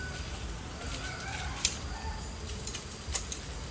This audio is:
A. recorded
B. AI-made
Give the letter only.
A